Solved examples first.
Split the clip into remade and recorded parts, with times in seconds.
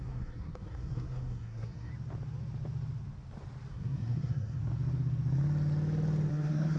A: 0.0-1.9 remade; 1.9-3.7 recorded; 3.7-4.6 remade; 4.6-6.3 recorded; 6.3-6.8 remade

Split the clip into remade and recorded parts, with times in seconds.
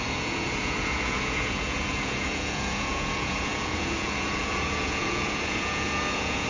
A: 0.0-6.5 remade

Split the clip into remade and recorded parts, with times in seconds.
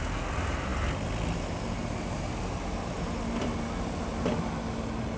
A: 0.0-5.2 recorded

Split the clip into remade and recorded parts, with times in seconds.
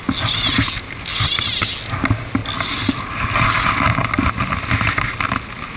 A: 0.0-5.8 recorded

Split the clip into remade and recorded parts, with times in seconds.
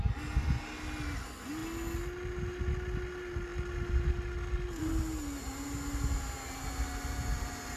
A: 0.0-7.8 recorded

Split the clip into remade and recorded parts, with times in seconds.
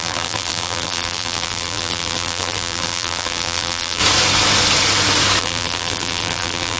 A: 0.0-4.0 remade; 4.0-5.4 recorded; 5.4-6.8 remade